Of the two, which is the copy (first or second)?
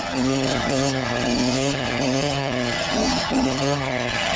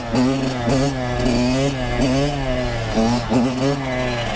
first